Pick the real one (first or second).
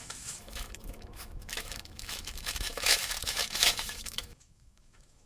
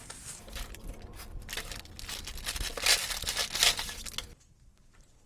second